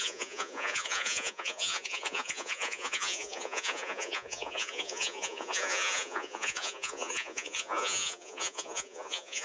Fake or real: fake